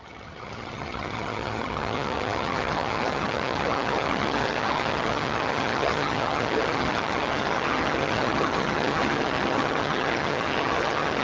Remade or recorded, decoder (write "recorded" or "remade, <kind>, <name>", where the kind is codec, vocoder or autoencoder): remade, vocoder, HiFi-GAN